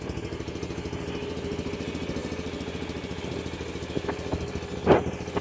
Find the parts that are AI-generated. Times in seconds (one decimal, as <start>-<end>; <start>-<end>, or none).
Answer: none